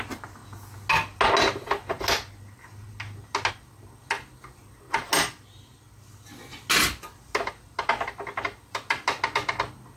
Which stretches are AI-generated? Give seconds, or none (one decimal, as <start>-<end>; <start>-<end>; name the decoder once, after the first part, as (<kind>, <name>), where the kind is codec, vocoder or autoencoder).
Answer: none